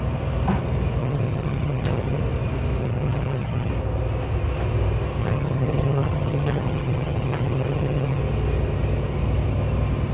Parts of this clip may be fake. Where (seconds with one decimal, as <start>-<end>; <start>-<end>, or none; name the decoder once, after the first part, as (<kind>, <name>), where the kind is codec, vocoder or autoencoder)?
1.0-2.2 (vocoder, HiFi-GAN); 2.8-3.7; 5.2-8.2